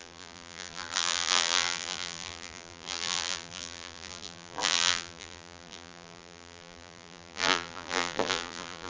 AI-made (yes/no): yes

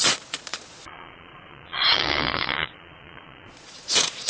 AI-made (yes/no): yes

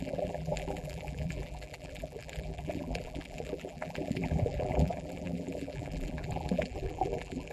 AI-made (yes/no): yes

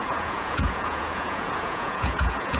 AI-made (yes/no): yes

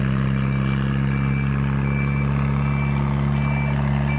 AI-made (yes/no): no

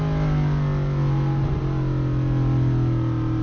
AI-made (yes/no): no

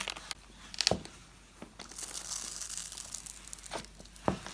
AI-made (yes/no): no